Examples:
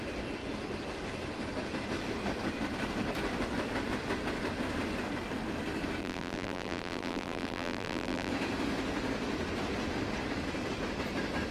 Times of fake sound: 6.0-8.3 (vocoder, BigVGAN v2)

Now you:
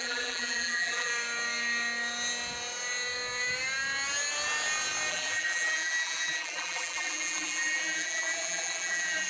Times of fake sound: 0.0-1.1 (vocoder, BigVGAN v2); 5.1-9.3